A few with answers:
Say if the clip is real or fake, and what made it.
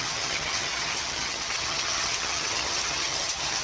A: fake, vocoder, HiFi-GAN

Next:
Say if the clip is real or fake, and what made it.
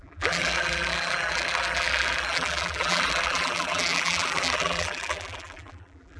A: fake, vocoder, BigVGAN v2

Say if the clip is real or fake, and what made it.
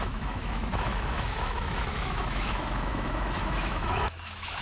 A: fake, autoencoder, DAC-VAE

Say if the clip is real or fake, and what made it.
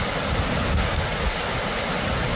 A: real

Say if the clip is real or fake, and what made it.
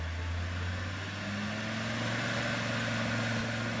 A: real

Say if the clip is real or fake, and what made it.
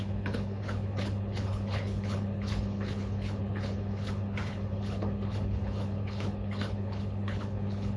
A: fake, codec, HILCodec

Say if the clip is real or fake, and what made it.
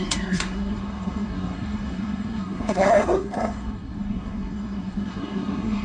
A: fake, codec, SNAC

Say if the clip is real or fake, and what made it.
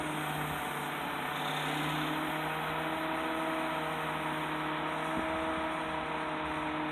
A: real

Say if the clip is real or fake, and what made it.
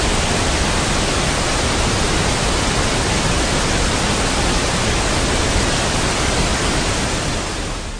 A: real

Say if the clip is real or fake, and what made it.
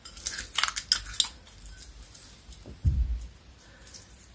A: real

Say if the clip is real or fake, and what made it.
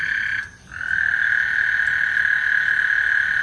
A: fake, vocoder, BigVGAN v2